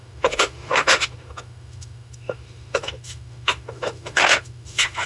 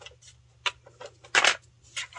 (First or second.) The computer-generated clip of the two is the first